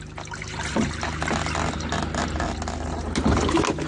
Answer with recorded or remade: recorded